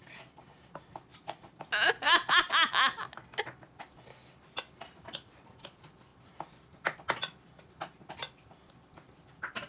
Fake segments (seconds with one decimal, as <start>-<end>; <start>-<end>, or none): none